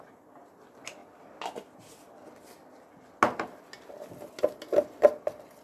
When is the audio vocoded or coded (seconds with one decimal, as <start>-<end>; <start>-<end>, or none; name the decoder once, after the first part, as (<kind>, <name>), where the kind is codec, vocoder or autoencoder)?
none